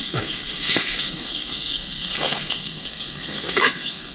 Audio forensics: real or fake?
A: fake